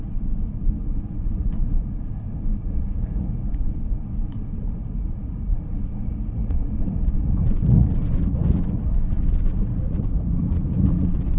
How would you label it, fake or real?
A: fake